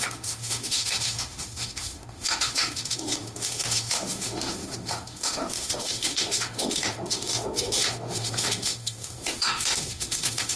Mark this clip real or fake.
fake